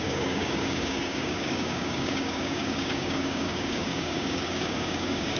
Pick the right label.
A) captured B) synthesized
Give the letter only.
B